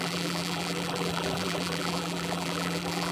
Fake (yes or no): yes